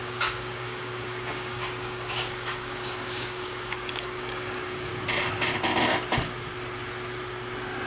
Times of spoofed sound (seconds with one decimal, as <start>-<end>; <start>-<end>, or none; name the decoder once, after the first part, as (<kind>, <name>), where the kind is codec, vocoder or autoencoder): 0.0-4.9 (codec, DAC)